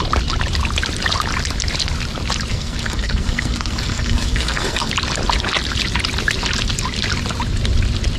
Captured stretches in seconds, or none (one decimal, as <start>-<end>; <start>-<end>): 0.0-2.5; 4.9-8.2